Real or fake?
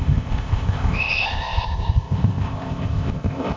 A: fake